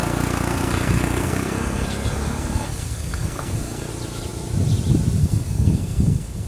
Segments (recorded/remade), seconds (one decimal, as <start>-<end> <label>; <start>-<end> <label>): 0.0-3.9 remade; 3.9-5.2 recorded; 5.2-6.5 remade